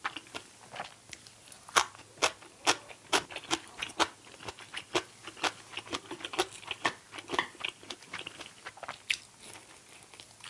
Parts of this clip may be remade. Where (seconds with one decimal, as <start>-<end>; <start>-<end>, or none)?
none